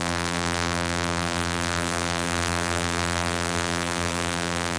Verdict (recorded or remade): remade